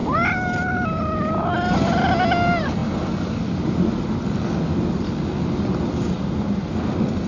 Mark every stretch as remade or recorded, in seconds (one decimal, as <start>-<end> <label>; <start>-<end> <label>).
0.0-7.3 recorded